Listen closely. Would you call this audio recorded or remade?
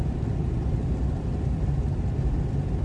recorded